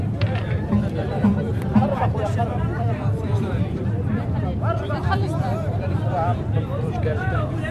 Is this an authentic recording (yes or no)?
no